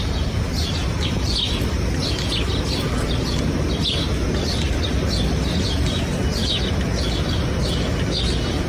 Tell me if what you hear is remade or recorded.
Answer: recorded